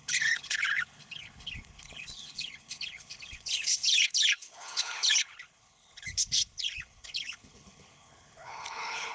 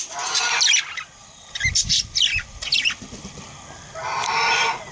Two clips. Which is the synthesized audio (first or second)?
first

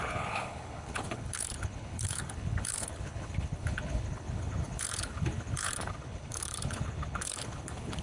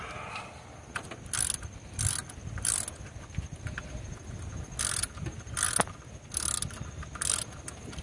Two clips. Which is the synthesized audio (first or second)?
first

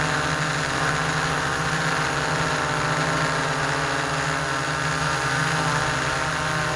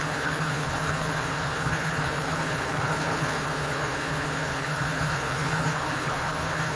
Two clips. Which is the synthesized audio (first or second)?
second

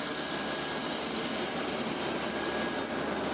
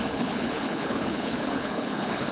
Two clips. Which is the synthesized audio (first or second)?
second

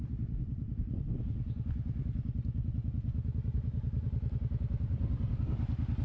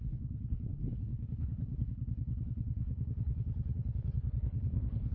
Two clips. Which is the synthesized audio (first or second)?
second